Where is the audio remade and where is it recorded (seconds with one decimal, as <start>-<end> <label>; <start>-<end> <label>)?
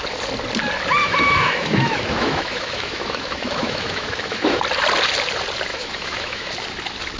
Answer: 0.0-1.0 recorded; 1.0-4.6 remade; 4.6-5.7 recorded; 5.7-6.5 remade; 6.5-7.2 recorded